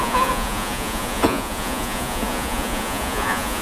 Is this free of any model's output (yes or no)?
no